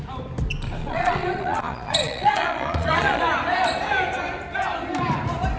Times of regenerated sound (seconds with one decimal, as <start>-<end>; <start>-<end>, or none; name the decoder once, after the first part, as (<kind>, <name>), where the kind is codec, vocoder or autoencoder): 0.8-3.2 (vocoder, Vocos)